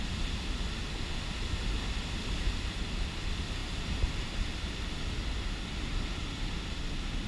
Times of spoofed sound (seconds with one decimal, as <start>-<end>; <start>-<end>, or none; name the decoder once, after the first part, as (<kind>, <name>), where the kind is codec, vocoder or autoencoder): none